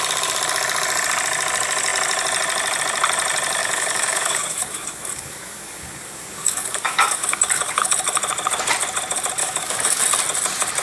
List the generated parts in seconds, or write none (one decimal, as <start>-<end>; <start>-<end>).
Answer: 3.6-7.9; 9.4-10.0